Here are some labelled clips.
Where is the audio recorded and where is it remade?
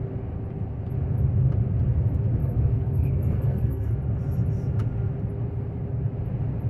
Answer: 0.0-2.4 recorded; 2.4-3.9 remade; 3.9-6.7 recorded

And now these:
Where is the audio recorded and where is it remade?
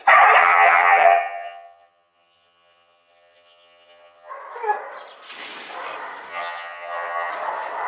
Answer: 0.0-0.4 recorded; 0.4-4.3 remade; 4.3-6.3 recorded; 6.3-7.3 remade; 7.3-7.9 recorded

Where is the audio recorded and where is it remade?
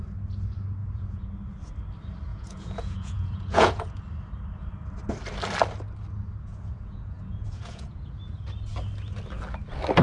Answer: 0.0-0.8 recorded; 0.8-1.3 remade; 1.3-2.3 recorded; 2.3-4.0 remade; 4.0-6.5 recorded; 6.5-8.2 remade; 8.2-10.0 recorded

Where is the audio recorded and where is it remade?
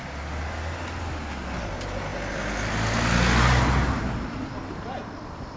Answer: 0.0-5.6 recorded